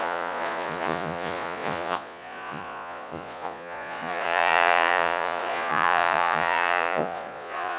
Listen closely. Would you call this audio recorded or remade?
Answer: remade